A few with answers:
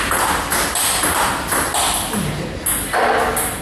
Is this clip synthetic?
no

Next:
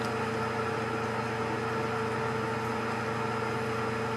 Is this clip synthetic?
no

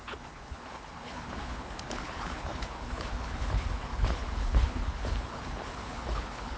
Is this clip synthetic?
yes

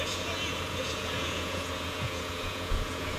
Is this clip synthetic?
yes